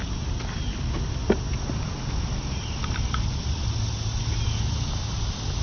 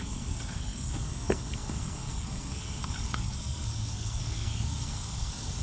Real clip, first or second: first